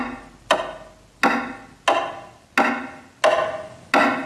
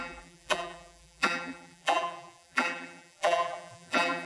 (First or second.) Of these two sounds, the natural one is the first